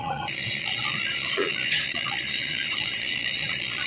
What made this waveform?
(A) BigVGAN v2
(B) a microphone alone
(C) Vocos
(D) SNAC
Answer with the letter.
C